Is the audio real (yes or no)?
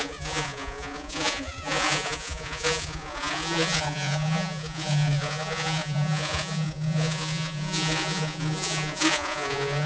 no